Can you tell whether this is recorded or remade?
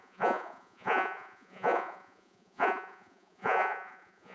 remade